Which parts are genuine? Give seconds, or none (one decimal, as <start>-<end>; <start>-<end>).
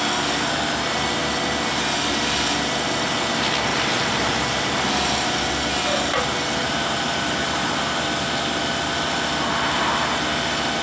0.0-3.7; 5.3-6.6; 7.7-10.8